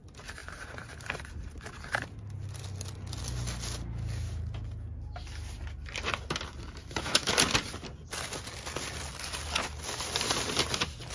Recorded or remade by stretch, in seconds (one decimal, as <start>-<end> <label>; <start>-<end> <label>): 0.0-6.8 recorded; 6.8-7.3 remade; 7.3-11.1 recorded